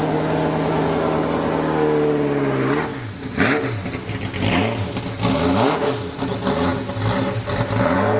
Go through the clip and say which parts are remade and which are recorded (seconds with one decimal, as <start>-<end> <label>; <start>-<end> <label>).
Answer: 0.0-8.2 recorded